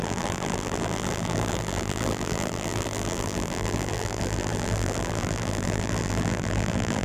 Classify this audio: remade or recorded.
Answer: remade